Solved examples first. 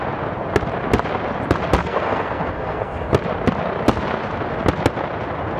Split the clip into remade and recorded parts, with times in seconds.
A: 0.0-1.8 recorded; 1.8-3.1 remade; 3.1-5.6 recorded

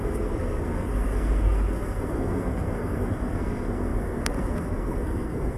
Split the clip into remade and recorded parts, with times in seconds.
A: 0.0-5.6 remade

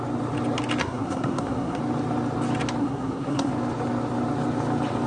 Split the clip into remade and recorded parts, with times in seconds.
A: 0.0-0.8 recorded; 0.8-1.8 remade; 1.8-2.8 recorded; 2.8-3.5 remade; 3.5-5.1 recorded

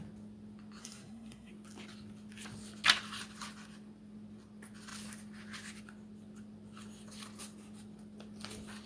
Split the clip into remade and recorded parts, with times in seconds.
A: 0.0-0.8 recorded; 0.8-1.5 remade; 1.5-8.9 recorded